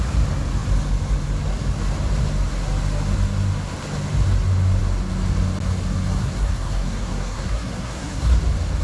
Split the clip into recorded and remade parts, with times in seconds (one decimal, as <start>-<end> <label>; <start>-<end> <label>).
0.0-6.2 recorded; 6.2-8.4 remade; 8.4-8.8 recorded